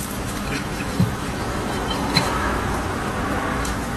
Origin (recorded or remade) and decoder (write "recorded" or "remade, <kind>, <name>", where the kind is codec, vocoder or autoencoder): remade, autoencoder, DAC-VAE